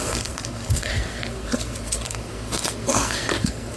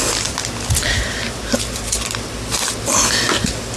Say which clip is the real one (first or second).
second